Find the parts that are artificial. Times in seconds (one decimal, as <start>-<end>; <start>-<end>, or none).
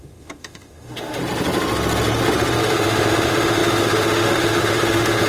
0.0-1.2; 2.6-5.3